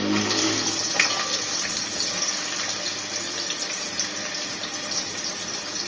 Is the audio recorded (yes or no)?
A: yes